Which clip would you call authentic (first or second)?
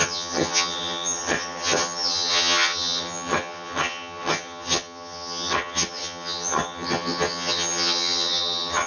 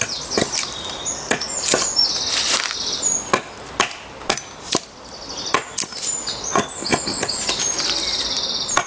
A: second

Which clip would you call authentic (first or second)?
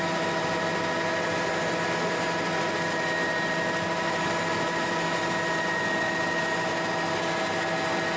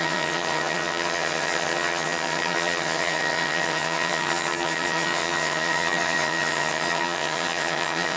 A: first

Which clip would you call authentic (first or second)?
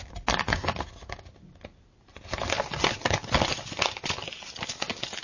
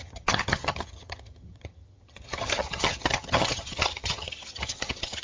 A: first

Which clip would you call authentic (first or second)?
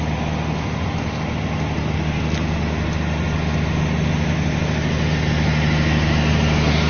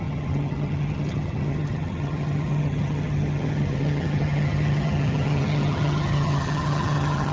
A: first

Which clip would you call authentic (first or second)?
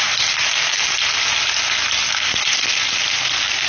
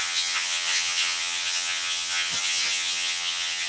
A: first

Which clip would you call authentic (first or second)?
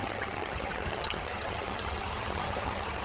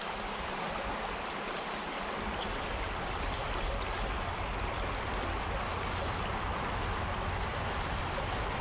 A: second